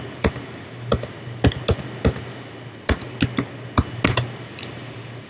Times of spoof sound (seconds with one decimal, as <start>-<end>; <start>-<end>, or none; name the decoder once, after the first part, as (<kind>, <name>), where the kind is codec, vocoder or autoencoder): 0.0-0.9 (vocoder, BigVGAN v2); 4.1-5.3